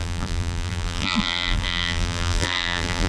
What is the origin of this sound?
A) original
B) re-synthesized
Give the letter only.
B